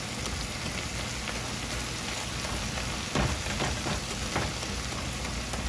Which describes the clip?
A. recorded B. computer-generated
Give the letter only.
A